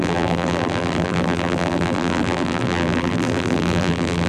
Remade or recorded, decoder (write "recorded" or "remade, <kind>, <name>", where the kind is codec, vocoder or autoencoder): remade, vocoder, BigVGAN v2